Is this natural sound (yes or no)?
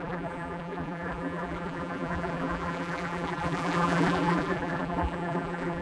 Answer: no